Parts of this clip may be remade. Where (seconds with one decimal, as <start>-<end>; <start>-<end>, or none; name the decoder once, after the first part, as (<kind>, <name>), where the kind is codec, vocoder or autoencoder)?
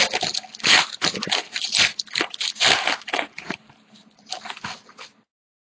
0.9-4.3 (vocoder, BigVGAN v2)